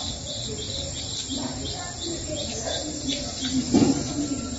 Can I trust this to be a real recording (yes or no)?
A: yes